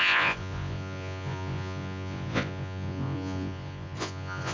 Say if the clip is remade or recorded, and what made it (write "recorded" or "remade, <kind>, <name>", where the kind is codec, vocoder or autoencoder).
remade, vocoder, Vocos